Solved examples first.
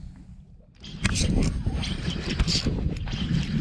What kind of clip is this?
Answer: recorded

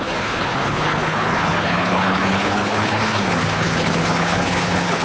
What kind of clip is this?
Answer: remade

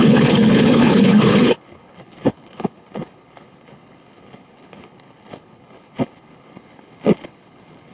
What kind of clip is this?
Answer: remade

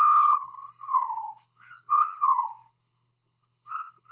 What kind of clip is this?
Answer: remade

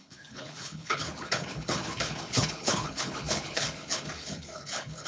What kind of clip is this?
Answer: remade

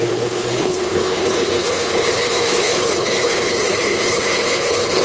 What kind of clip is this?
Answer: remade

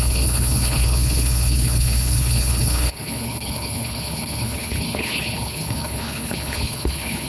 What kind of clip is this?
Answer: remade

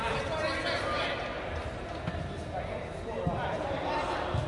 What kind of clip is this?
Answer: recorded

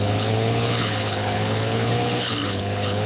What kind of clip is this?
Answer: remade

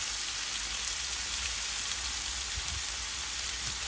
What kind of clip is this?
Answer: recorded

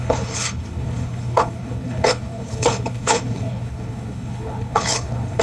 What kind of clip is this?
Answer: remade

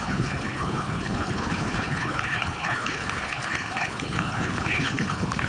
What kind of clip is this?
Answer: remade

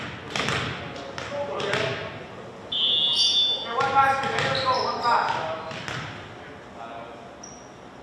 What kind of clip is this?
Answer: recorded